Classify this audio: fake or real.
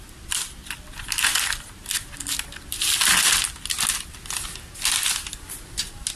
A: real